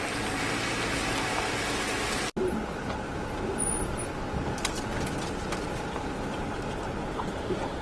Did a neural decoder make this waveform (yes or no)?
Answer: no